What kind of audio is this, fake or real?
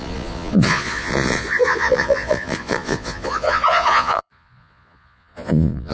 fake